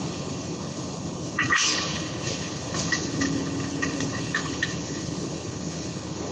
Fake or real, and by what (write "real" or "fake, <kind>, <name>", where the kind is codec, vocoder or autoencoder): fake, codec, HILCodec